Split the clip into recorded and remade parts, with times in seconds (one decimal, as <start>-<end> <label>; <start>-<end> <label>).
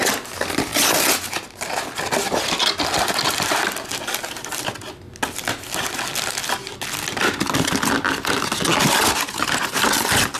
0.0-10.4 recorded